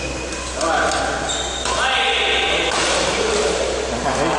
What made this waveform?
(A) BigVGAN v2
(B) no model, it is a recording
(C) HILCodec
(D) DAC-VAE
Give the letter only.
B